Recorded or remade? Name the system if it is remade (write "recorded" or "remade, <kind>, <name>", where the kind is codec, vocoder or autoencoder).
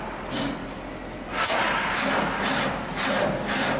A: recorded